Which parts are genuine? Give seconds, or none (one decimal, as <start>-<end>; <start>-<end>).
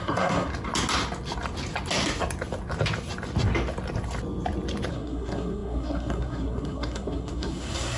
0.5-4.9